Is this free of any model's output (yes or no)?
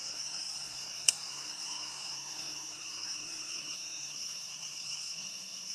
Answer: no